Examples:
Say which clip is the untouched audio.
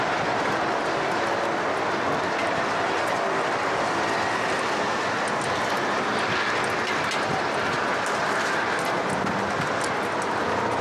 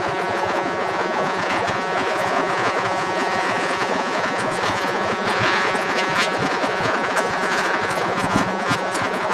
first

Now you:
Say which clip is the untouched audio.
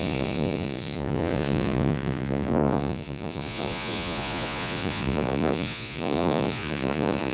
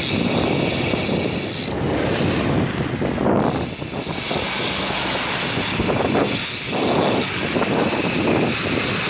second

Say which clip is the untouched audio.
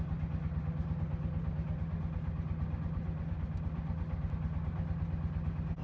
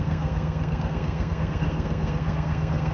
first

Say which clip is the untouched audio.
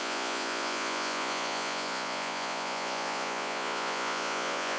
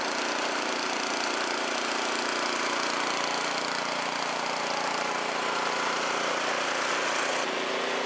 second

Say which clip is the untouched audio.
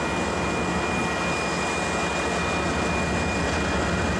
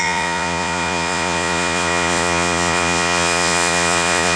first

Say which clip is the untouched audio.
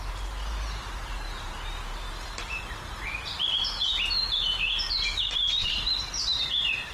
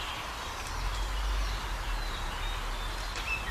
second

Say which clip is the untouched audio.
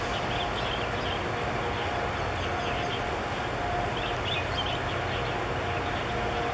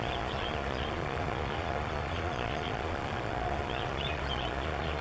first